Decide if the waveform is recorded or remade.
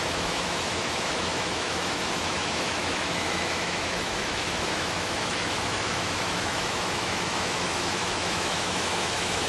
remade